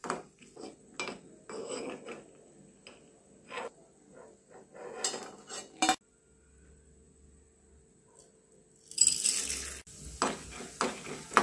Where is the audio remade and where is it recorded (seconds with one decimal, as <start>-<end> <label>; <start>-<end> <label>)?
0.0-11.4 recorded